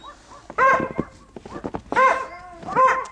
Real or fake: real